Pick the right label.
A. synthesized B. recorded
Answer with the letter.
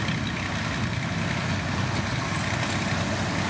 B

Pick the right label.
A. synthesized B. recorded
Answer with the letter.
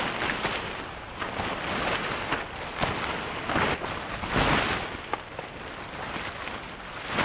B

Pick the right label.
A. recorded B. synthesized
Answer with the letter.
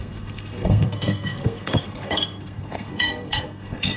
B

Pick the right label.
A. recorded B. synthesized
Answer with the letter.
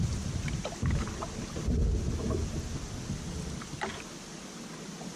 A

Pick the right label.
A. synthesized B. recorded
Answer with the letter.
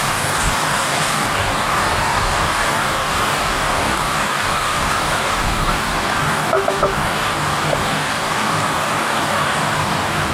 A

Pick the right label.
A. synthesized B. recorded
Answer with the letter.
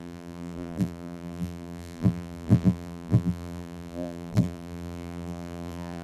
A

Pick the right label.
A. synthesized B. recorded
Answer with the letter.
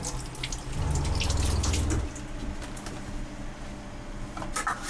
B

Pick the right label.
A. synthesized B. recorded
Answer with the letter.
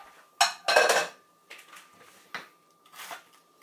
B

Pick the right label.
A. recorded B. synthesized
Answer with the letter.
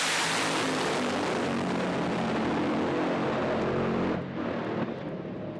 A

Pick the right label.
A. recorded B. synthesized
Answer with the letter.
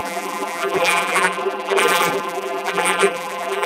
B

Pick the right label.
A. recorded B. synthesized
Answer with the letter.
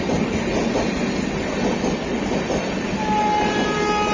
A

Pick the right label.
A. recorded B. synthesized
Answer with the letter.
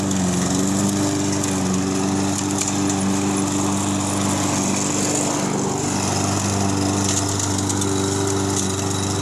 A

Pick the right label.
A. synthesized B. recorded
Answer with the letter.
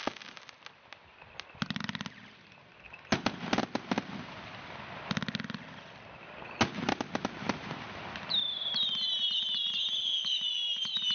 B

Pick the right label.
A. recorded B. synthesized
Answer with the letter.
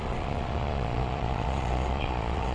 B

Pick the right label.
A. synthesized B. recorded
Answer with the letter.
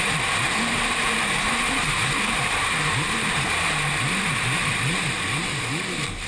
A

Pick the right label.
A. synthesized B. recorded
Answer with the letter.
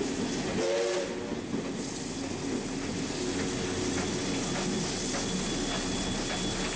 B